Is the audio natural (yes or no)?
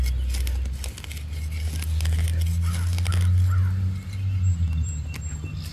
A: yes